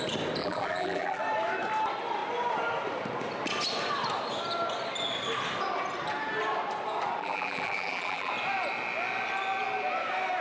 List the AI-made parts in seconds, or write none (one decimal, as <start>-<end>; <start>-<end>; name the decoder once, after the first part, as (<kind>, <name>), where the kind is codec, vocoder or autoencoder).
0.4-1.2 (vocoder, BigVGAN v2); 7.2-8.3

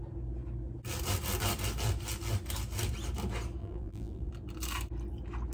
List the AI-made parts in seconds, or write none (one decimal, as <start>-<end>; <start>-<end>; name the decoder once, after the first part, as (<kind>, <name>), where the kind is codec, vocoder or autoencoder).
3.6-4.3 (vocoder, BigVGAN v2)

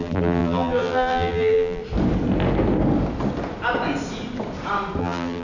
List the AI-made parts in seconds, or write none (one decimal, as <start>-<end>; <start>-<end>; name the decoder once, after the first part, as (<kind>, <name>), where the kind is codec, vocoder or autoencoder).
0.0-1.8 (vocoder, BigVGAN v2); 5.0-5.4

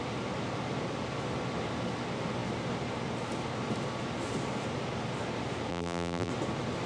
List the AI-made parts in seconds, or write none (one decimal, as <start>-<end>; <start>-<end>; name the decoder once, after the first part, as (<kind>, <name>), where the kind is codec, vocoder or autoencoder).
5.7-6.3 (vocoder, BigVGAN v2)